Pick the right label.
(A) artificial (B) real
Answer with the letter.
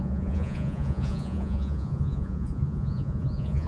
A